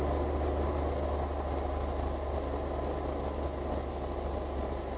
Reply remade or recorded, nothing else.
recorded